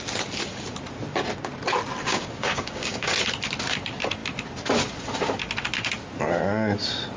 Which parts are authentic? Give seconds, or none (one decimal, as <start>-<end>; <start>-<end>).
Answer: 0.0-2.0; 3.1-7.2